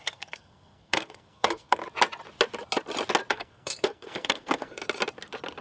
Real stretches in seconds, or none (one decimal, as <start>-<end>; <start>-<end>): 1.8-3.3; 4.8-5.6